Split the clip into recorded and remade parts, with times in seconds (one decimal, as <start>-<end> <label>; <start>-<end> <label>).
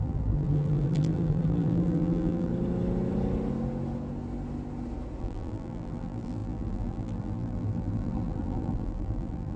0.0-2.5 remade; 2.5-5.2 recorded; 5.2-9.6 remade